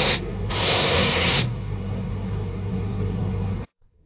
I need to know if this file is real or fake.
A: fake